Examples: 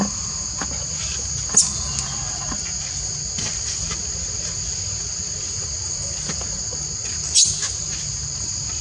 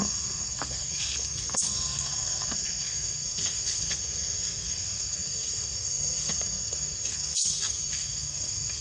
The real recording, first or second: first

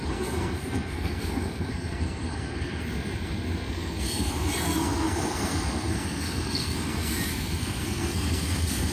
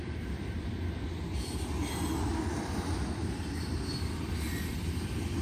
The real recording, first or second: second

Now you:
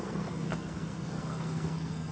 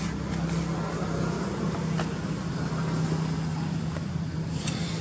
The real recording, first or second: second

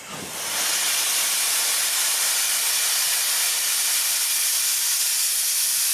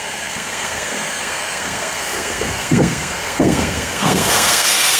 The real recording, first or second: first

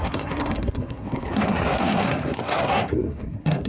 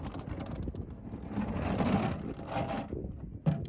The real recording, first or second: second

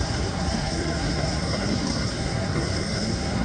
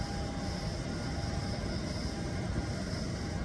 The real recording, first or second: second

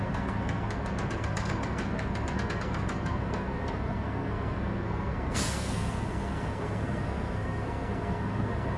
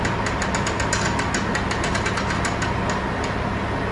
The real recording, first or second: second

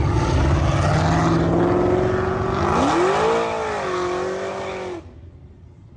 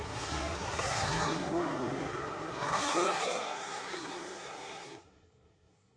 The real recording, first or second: first